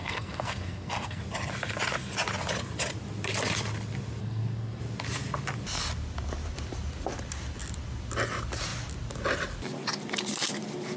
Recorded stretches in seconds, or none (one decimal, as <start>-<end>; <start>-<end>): 1.2-4.2; 4.8-11.0